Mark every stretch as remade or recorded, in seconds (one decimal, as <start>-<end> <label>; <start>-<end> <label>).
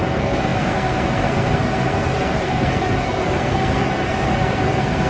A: 0.0-5.1 remade